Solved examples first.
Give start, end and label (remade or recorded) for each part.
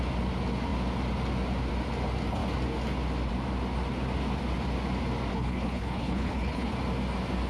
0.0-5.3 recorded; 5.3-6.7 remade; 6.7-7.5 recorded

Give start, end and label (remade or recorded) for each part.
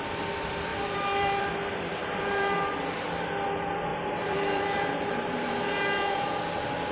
0.0-0.7 recorded; 0.7-1.5 remade; 1.5-2.0 recorded; 2.0-2.8 remade; 2.8-3.9 recorded; 3.9-6.3 remade; 6.3-6.9 recorded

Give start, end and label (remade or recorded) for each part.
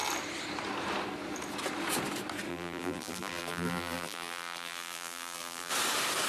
0.0-2.5 recorded; 2.5-5.7 remade; 5.7-6.3 recorded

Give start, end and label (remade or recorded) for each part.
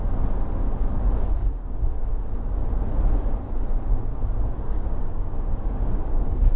0.0-1.4 recorded; 1.4-2.1 remade; 2.1-4.1 recorded; 4.1-6.6 remade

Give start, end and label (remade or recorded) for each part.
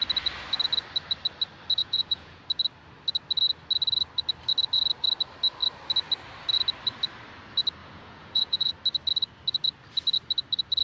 0.0-1.8 recorded; 1.8-2.4 remade; 2.4-7.8 recorded; 7.8-8.7 remade; 8.7-10.8 recorded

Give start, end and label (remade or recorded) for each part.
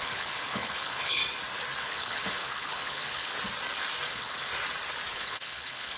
0.0-1.2 remade; 1.2-1.8 recorded; 1.8-3.3 remade; 3.3-4.1 recorded; 4.1-4.5 remade; 4.5-5.1 recorded; 5.1-6.0 remade